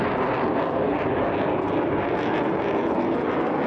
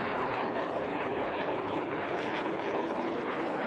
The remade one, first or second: second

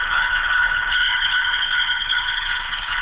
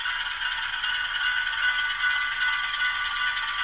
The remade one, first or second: first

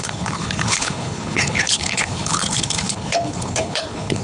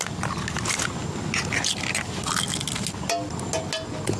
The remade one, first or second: first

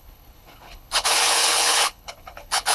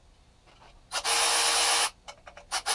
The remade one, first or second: first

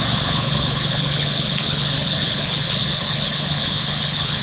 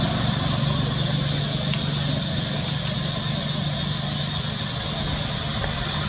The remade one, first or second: first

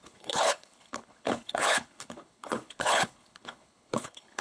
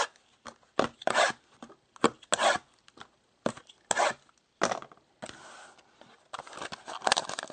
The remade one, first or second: first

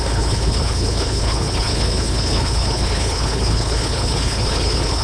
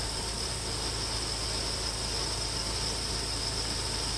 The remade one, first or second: first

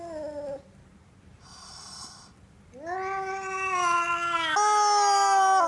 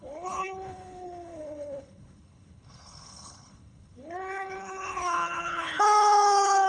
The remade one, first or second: second